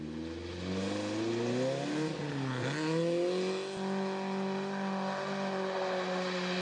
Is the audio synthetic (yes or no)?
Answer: no